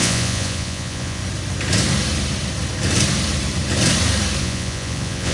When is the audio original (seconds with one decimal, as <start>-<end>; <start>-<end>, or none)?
1.2-4.4